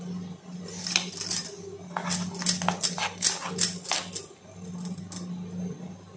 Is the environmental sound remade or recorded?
recorded